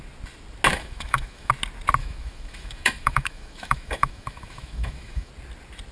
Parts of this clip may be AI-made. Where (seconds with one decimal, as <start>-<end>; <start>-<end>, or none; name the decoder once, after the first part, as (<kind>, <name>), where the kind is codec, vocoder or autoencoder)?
0.7-1.5 (autoencoder, DAC-VAE); 2.0-5.3